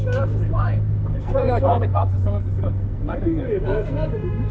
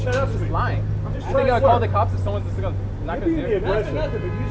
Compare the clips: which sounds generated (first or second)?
first